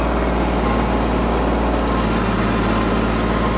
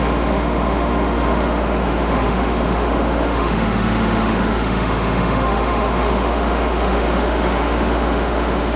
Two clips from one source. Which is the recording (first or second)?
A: first